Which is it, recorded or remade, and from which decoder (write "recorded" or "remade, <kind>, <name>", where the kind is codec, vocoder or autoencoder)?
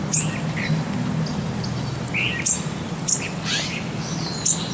recorded